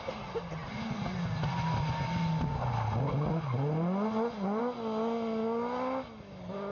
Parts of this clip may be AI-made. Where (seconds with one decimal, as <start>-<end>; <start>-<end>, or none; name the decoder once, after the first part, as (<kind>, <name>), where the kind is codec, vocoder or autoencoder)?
none

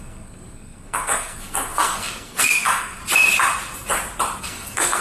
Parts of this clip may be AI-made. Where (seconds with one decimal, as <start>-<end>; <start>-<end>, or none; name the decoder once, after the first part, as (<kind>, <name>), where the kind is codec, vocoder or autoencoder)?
0.0-3.0 (codec, SNAC); 4.4-5.0

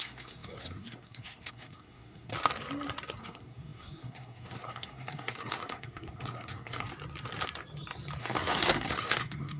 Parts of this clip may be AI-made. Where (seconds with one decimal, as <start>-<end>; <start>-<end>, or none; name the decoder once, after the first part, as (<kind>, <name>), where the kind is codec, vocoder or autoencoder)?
0.0-2.3 (codec, SNAC); 3.2-6.9; 8.2-9.6